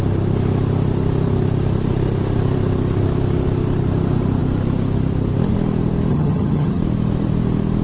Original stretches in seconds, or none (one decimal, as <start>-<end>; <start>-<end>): 0.0-6.1; 6.8-7.8